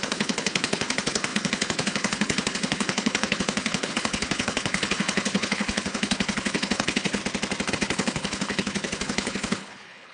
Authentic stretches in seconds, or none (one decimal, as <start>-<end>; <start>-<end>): 7.2-7.7